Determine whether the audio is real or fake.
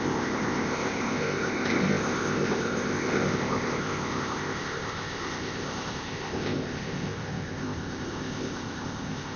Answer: fake